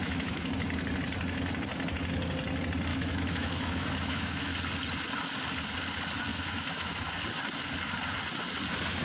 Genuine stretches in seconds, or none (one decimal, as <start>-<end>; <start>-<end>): 0.5-2.9; 4.5-6.3; 7.1-9.0